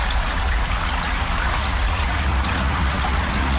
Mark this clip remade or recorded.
remade